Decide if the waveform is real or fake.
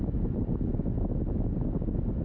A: real